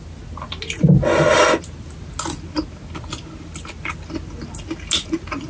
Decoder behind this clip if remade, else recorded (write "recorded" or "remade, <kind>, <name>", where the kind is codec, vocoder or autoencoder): recorded